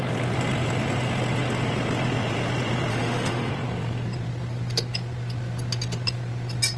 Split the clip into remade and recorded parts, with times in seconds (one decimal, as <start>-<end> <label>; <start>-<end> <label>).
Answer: 0.0-2.9 recorded; 2.9-3.5 remade; 3.5-6.8 recorded